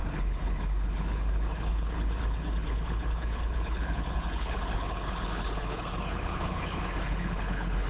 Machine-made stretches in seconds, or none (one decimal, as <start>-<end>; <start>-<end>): 0.0-7.9